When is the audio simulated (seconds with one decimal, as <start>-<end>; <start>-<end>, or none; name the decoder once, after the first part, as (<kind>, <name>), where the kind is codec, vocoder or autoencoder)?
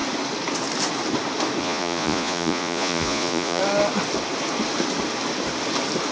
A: 1.6-3.6 (vocoder, Vocos)